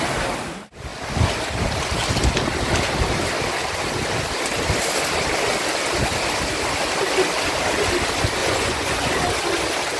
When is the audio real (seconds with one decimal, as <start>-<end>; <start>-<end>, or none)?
0.0-8.4; 9.1-10.0